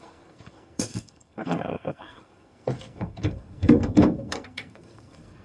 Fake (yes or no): yes